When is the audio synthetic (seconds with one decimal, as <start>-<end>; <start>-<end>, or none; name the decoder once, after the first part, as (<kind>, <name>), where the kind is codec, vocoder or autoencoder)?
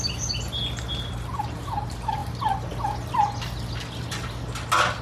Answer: none